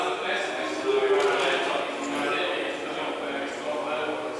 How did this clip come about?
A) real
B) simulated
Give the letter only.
A